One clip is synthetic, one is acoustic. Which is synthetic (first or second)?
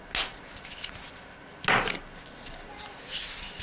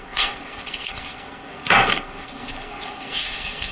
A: second